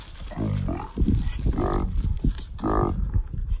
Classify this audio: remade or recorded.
recorded